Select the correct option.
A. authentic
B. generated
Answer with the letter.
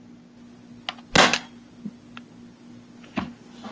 A